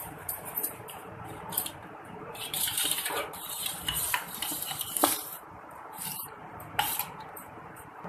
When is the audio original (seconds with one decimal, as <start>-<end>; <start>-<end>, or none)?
none